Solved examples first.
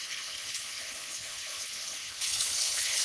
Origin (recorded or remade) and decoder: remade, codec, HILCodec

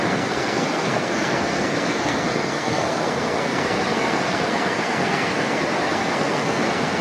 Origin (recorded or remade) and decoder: remade, codec, SNAC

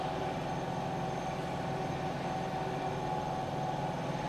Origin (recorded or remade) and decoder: recorded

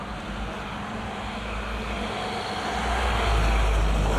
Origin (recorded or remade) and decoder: recorded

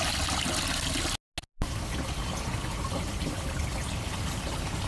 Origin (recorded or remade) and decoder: recorded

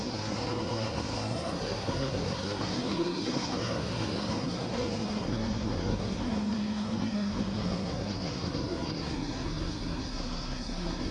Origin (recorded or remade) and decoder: remade, codec, SNAC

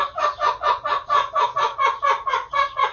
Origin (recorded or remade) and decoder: remade, vocoder, Vocos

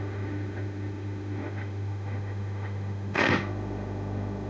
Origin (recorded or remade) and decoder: remade, autoencoder, DAC-VAE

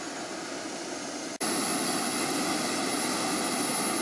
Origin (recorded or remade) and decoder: recorded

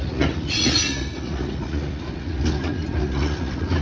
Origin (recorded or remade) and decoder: remade, vocoder, Vocos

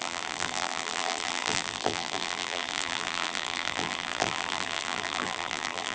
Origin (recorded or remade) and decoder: remade, vocoder, BigVGAN v2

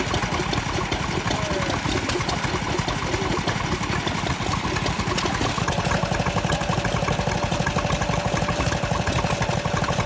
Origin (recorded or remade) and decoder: recorded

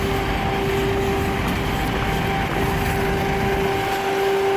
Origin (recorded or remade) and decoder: recorded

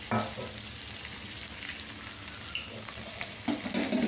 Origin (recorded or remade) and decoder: recorded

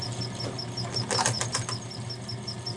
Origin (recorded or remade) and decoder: recorded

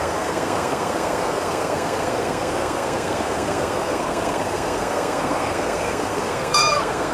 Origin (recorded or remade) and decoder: remade, codec, SNAC